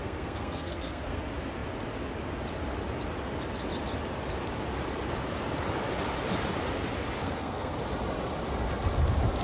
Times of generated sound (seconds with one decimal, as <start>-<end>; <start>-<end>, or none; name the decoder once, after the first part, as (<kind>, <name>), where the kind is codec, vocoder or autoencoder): 0.0-1.2 (codec, SNAC); 7.2-7.8